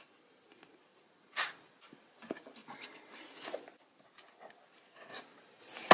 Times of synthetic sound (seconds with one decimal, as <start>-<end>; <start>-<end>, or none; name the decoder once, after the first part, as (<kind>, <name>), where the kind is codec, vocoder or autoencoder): 0.9-1.8 (vocoder, BigVGAN v2); 2.6-3.2; 5.1-5.9